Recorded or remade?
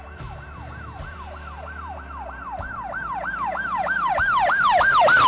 remade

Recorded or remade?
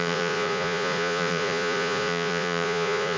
remade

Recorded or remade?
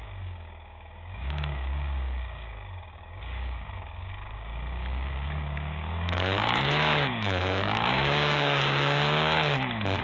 remade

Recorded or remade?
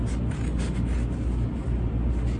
recorded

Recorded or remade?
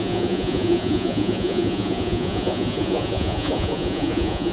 remade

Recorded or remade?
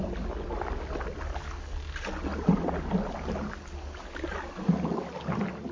recorded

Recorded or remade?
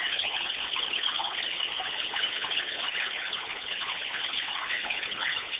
remade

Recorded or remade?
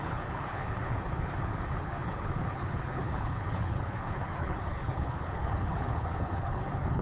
remade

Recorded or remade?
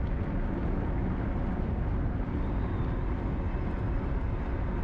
recorded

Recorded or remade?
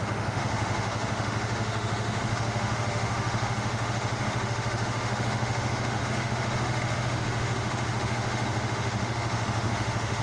remade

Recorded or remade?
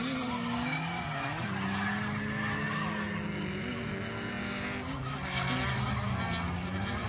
recorded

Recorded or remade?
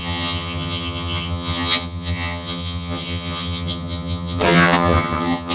remade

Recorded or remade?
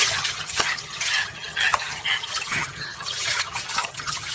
remade